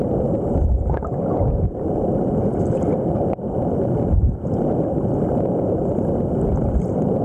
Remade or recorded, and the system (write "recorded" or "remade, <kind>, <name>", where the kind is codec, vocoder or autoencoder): recorded